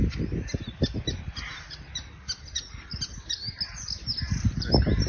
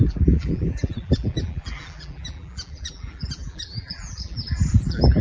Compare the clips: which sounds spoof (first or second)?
second